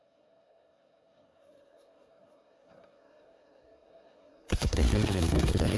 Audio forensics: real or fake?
fake